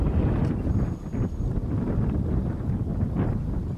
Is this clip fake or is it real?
real